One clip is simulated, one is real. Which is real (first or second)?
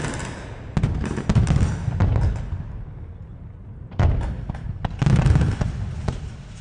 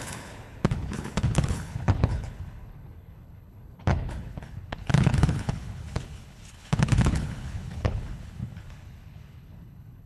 first